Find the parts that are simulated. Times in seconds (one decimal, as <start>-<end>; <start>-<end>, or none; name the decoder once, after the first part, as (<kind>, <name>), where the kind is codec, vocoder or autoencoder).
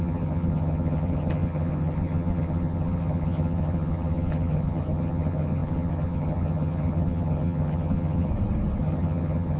0.0-8.3 (vocoder, HiFi-GAN); 8.8-9.6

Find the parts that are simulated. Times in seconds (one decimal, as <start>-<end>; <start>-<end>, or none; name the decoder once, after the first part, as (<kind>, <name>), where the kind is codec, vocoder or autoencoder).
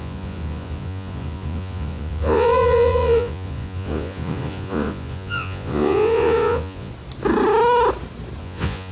0.0-6.9 (vocoder, Vocos); 8.4-8.9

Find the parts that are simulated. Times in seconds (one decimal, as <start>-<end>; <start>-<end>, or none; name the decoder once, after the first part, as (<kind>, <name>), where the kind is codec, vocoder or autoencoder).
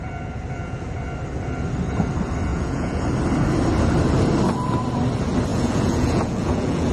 2.5-3.0 (vocoder, Vocos); 5.5-6.9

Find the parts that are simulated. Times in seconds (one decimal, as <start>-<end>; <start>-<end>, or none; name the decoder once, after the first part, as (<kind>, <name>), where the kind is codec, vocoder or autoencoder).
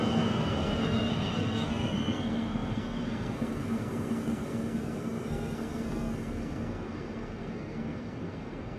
0.0-8.8 (codec, SNAC)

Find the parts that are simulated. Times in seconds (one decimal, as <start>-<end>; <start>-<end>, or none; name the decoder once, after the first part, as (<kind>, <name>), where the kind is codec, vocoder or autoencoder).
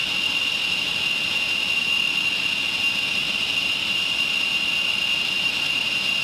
none